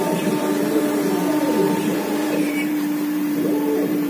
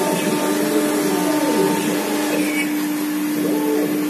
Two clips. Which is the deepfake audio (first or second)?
first